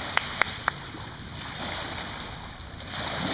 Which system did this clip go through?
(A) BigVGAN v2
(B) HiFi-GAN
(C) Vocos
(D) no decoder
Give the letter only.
D